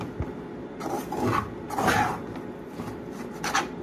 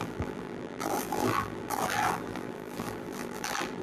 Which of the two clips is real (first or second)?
first